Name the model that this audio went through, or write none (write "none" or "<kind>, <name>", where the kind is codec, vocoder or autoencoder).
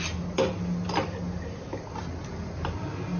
none